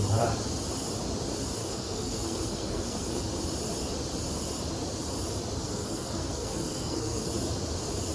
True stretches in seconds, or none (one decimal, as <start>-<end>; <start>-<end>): 0.0-1.6; 3.2-5.6; 7.3-8.1